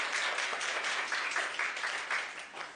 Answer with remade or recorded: recorded